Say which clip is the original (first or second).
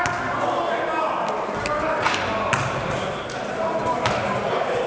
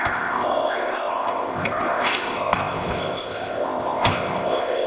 first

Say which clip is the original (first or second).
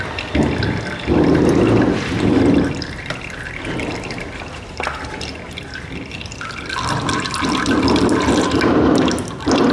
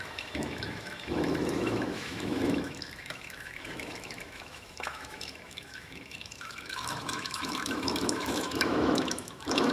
first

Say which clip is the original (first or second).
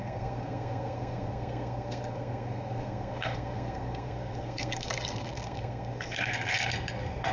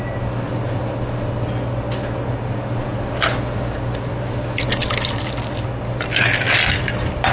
second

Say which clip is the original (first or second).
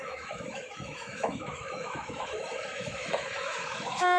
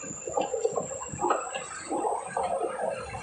second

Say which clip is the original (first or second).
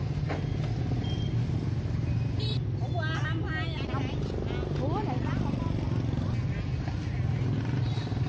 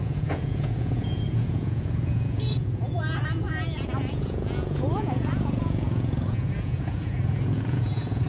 first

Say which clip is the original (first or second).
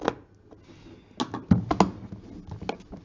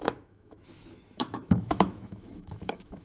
first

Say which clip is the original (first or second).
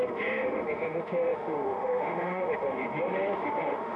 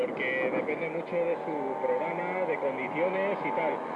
second